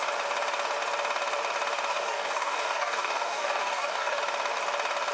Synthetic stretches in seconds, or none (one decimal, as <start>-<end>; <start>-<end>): 1.9-4.2